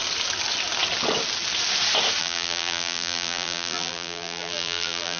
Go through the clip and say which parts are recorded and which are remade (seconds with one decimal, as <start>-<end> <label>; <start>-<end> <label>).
0.0-2.2 recorded; 2.2-5.2 remade

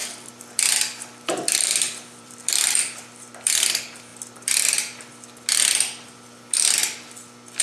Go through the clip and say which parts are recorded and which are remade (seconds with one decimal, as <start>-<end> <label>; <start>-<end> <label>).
0.0-4.1 remade; 4.1-7.6 recorded

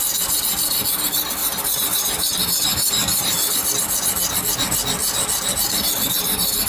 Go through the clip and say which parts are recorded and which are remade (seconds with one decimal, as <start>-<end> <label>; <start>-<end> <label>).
0.0-1.4 recorded; 1.4-3.7 remade; 3.7-6.7 recorded

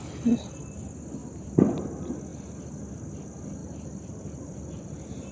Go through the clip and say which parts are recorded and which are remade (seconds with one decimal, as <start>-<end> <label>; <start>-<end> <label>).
0.0-1.2 recorded; 1.2-1.7 remade; 1.7-2.3 recorded; 2.3-2.9 remade; 2.9-3.6 recorded; 3.6-4.7 remade; 4.7-5.3 recorded